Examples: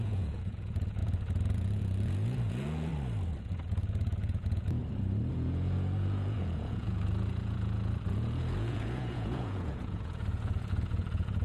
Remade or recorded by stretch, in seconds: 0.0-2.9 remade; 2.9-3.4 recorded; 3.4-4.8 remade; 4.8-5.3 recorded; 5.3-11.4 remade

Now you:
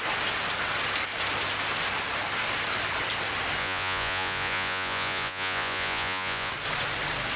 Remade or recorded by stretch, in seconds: 0.0-3.6 recorded; 3.6-6.5 remade; 6.5-7.4 recorded

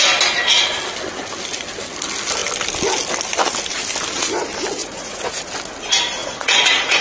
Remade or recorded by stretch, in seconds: 0.0-4.8 recorded; 4.8-5.3 remade; 5.3-6.2 recorded; 6.2-7.0 remade

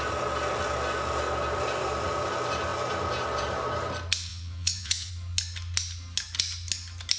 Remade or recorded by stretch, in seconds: 0.0-4.3 recorded; 4.3-5.1 remade; 5.1-7.2 recorded

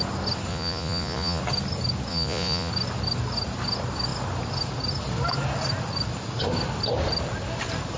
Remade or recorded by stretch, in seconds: 0.0-0.5 recorded; 0.5-1.4 remade; 1.4-2.1 recorded; 2.1-2.7 remade; 2.7-8.0 recorded